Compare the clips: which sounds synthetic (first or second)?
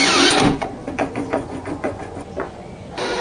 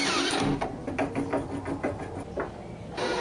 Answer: first